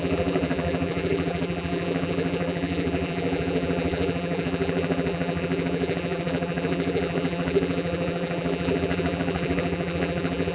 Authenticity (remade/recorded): remade